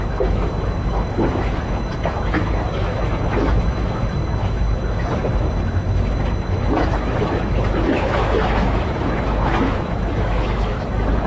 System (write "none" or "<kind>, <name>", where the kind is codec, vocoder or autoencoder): autoencoder, DAC-VAE